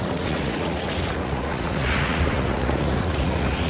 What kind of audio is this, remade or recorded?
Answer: remade